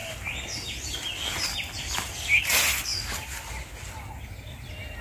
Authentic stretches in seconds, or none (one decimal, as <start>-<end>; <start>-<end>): 0.0-5.0